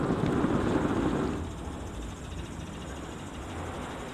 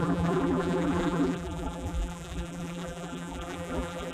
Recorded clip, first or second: first